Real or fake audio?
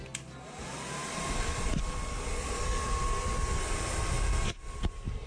real